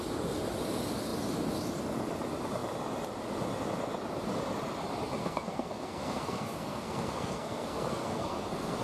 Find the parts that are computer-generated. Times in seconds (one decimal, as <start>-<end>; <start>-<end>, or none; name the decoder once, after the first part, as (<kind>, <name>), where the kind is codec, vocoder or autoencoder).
5.2-8.8 (codec, SNAC)